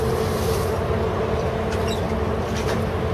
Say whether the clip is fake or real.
real